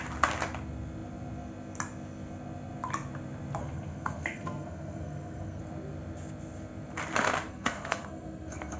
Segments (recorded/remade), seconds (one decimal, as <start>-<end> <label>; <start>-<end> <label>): 0.0-3.6 recorded; 3.6-5.6 remade; 5.6-7.5 recorded; 7.5-8.8 remade